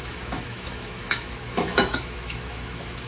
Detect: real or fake fake